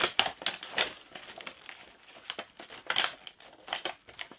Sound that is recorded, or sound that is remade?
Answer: recorded